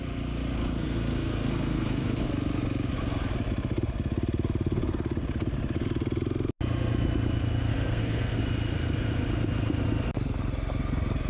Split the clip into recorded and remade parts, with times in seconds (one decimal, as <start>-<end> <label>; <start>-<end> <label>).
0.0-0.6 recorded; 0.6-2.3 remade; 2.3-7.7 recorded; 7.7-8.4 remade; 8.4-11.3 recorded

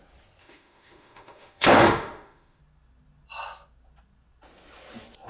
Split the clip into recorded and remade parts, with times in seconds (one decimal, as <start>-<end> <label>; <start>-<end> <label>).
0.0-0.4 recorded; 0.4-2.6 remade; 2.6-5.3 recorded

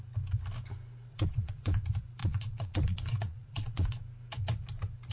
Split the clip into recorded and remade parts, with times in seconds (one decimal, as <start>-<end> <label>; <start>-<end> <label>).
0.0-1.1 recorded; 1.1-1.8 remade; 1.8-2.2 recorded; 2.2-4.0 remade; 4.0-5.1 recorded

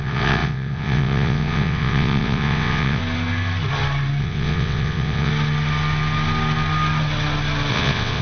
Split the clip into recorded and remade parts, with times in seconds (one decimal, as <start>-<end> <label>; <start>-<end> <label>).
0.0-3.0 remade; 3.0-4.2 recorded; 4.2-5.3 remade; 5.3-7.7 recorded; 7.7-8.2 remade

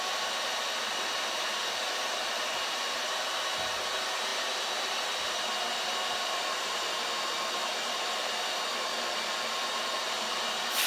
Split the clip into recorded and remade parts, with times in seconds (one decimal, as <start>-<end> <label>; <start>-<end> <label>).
0.0-10.9 remade

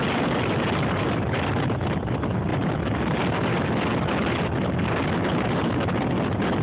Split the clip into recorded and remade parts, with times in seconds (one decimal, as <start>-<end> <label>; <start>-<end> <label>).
0.0-6.6 recorded

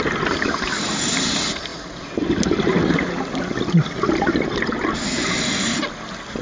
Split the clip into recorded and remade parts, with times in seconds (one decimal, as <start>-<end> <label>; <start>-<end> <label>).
0.0-6.4 recorded

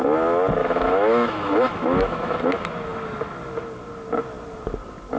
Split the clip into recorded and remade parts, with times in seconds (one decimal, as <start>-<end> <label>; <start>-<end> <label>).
0.0-0.6 recorded; 0.6-2.4 remade; 2.4-5.2 recorded